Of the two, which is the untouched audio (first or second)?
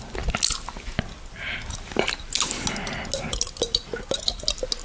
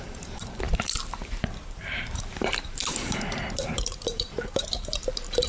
first